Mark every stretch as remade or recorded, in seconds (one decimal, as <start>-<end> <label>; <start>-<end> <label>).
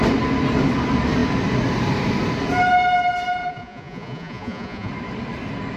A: 0.0-3.5 recorded; 3.5-4.9 remade; 4.9-5.8 recorded